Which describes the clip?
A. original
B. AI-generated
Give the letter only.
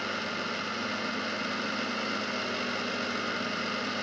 A